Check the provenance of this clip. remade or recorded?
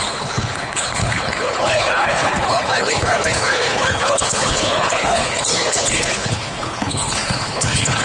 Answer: remade